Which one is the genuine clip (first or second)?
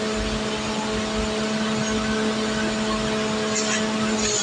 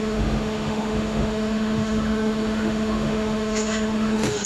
first